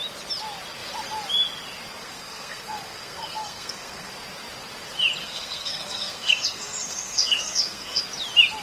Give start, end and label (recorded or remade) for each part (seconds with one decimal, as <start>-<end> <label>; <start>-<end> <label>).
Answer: 0.0-2.0 recorded; 2.0-4.1 remade; 4.1-5.2 recorded; 5.2-8.0 remade; 8.0-8.6 recorded